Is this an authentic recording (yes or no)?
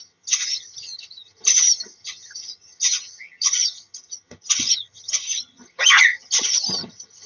no